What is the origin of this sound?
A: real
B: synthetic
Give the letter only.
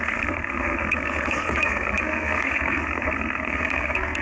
B